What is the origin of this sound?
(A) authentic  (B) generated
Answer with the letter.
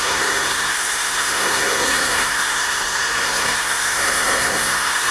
B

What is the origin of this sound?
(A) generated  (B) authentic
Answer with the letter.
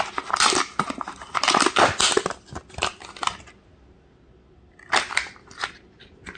B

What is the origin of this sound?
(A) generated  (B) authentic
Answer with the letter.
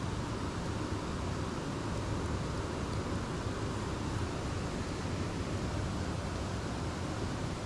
B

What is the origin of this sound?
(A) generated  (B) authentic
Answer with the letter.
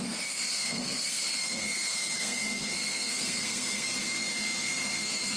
A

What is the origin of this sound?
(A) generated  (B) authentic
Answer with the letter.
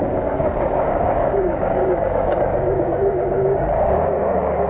A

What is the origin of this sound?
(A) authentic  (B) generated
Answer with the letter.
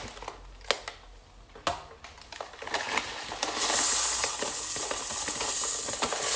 A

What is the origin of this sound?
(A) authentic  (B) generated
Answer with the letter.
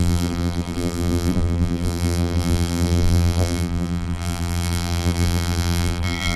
B